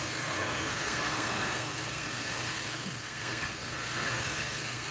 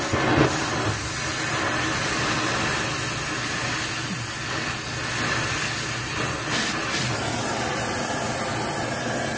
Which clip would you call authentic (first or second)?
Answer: second